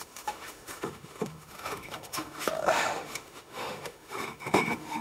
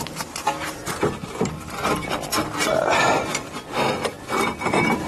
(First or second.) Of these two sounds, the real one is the second